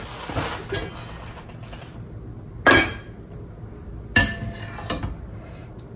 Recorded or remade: recorded